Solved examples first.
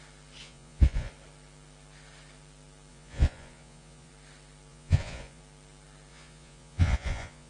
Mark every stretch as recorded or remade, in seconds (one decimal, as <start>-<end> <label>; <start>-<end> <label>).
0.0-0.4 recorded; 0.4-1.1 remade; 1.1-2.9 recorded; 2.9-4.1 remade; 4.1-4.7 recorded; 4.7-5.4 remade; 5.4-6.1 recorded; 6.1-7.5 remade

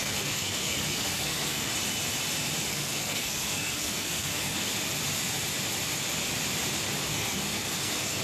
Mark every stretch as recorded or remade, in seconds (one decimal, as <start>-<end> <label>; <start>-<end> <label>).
0.0-1.7 remade; 1.7-2.7 recorded; 2.7-4.7 remade; 4.7-7.1 recorded; 7.1-8.2 remade

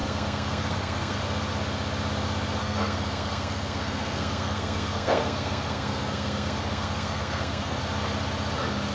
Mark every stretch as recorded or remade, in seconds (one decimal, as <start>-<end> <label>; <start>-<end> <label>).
0.0-1.2 remade; 1.2-2.6 recorded; 2.6-7.8 remade; 7.8-8.9 recorded

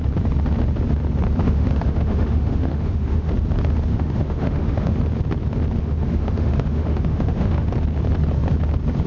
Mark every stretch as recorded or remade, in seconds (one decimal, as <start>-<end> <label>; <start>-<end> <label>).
0.0-1.4 recorded; 1.4-3.3 remade; 3.3-3.9 recorded; 3.9-5.0 remade; 5.0-5.8 recorded; 5.8-7.7 remade; 7.7-9.1 recorded

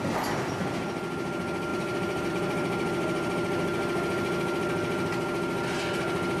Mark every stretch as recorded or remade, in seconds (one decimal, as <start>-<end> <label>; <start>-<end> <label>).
0.0-1.7 recorded; 1.7-2.3 remade; 2.3-6.4 recorded

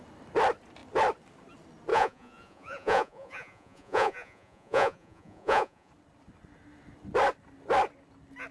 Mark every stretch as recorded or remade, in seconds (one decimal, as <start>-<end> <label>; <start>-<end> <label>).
0.0-1.9 recorded; 1.9-5.9 remade; 5.9-8.5 recorded

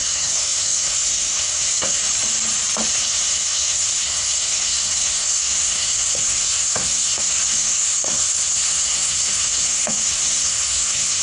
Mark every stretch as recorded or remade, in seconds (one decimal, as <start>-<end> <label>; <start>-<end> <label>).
0.0-2.0 remade; 2.0-2.9 recorded; 2.9-11.2 remade

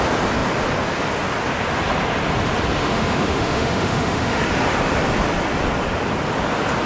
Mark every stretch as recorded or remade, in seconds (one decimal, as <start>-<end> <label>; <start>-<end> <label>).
0.0-2.8 recorded; 2.8-4.4 remade; 4.4-6.8 recorded